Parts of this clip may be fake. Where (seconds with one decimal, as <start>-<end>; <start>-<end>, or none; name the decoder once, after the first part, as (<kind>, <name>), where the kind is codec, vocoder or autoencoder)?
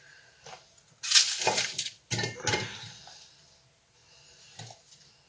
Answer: none